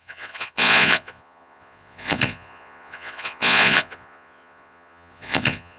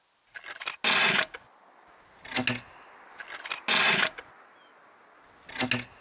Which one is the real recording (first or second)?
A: second